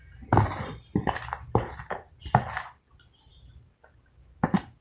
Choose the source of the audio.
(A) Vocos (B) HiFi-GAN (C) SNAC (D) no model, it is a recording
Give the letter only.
D